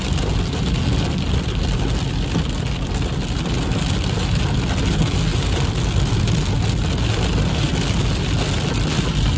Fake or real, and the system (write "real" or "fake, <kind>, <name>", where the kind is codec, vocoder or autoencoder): real